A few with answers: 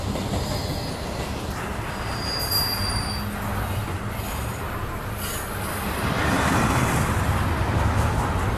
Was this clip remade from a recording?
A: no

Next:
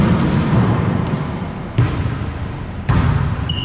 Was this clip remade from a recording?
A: yes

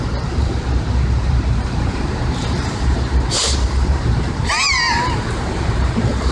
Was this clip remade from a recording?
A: yes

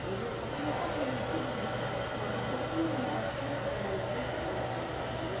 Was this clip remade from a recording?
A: no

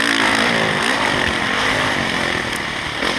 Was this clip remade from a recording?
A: no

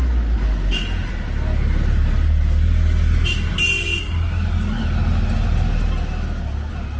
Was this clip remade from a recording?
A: no